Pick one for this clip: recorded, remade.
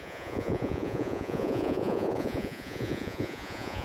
remade